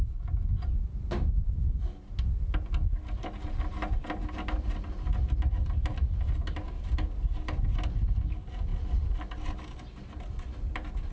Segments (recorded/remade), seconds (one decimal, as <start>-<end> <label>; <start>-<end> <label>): 0.0-11.1 recorded